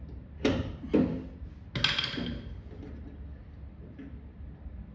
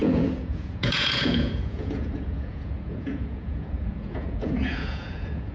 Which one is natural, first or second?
first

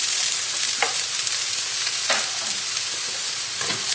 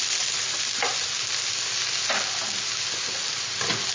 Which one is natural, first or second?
second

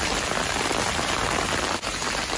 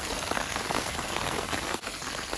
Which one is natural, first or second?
first